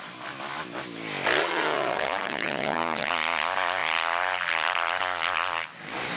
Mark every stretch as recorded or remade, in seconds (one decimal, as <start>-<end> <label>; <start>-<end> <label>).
0.0-1.4 recorded; 1.4-3.1 remade; 3.1-6.2 recorded